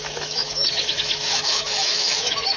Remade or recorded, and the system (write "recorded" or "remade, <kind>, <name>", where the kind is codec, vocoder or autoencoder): remade, autoencoder, DAC-VAE